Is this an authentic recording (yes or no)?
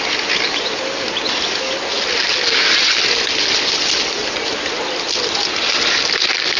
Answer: yes